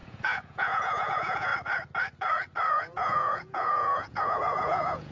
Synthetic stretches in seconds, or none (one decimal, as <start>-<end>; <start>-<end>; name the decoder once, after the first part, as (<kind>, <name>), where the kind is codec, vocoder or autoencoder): 0.0-1.5 (vocoder, Vocos); 2.7-5.1